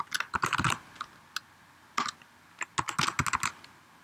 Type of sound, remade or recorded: recorded